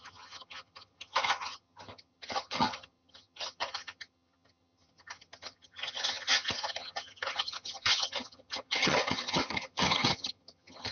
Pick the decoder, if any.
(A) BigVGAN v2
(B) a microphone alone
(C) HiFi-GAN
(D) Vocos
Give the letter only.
C